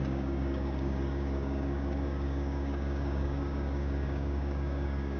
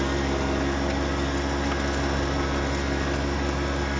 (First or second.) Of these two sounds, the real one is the second